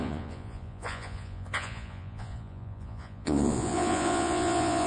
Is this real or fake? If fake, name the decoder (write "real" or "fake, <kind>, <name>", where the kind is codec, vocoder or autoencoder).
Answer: fake, vocoder, Vocos